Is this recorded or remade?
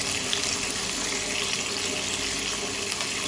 recorded